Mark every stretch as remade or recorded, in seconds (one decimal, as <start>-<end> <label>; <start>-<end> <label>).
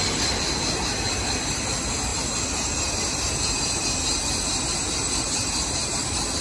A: 0.0-6.4 recorded